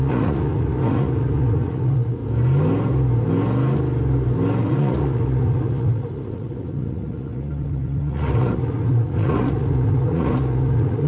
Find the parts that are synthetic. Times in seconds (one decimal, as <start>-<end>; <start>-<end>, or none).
0.0-2.2; 4.6-11.1